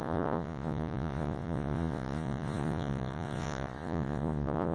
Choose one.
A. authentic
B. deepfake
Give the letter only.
B